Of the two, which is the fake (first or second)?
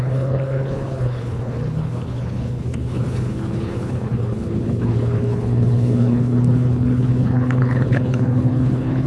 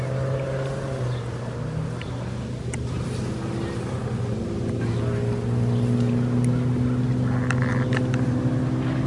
first